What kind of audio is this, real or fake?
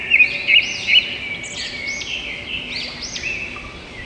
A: real